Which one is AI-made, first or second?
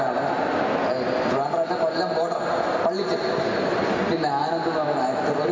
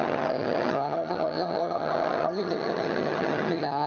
second